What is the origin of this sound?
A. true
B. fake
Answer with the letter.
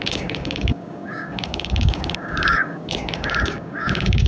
B